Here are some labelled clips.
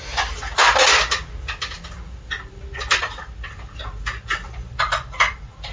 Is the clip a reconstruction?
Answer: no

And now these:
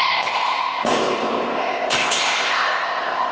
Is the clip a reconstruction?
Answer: yes